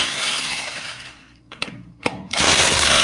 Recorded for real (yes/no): no